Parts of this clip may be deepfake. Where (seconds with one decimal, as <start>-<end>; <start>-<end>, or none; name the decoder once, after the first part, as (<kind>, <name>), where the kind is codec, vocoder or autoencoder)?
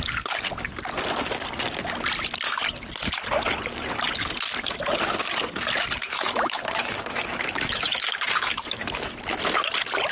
6.0-9.1 (autoencoder, DAC-VAE)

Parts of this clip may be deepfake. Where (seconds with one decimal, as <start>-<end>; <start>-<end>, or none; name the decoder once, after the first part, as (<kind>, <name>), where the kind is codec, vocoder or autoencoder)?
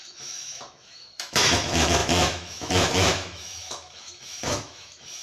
0.0-5.2 (autoencoder, DAC-VAE)